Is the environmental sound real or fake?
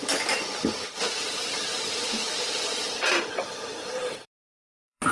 fake